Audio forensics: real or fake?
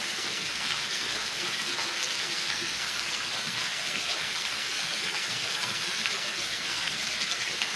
fake